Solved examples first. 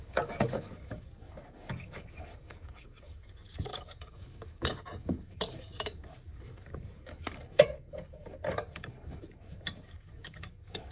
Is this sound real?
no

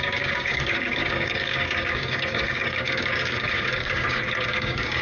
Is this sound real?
no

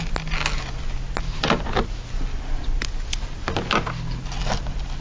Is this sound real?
yes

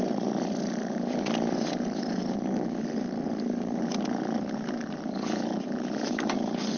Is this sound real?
yes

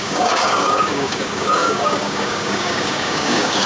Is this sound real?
no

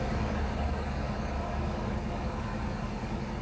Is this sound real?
no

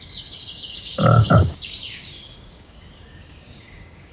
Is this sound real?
no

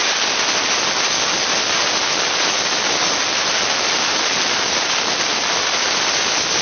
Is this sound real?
yes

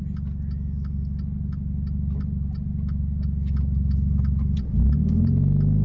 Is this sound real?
yes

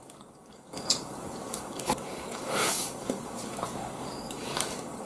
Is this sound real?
no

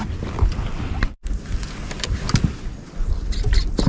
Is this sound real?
yes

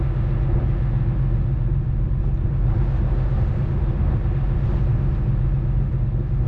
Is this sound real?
yes